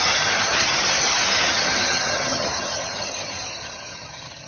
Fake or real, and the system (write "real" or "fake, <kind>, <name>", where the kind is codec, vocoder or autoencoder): fake, vocoder, HiFi-GAN